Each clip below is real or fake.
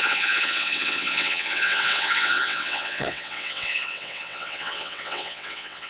fake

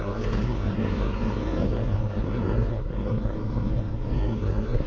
fake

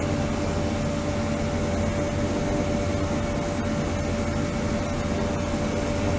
real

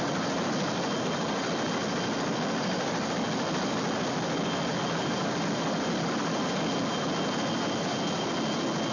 real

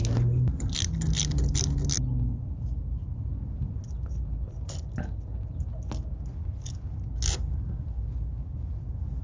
real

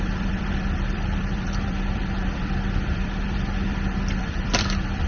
fake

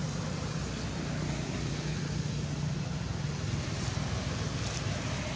real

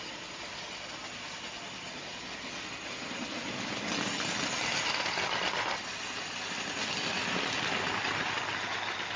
real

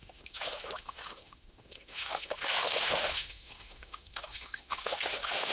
fake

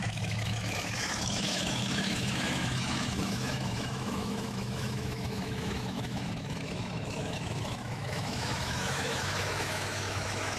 fake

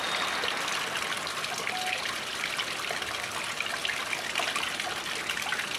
real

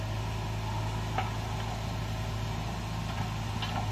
real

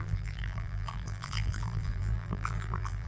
fake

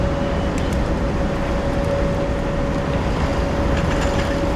real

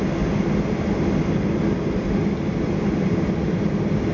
real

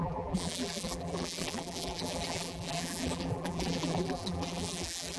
fake